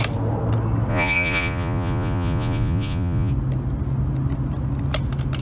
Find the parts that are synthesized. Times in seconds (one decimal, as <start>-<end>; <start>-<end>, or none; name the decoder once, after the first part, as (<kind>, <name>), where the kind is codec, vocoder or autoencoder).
0.9-3.3 (vocoder, Vocos)